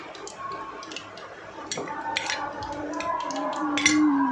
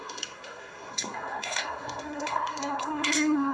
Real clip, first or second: first